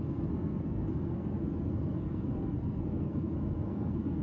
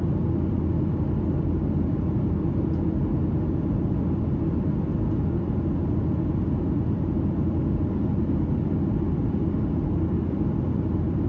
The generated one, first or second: first